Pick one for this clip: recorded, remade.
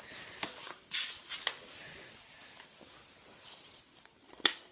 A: recorded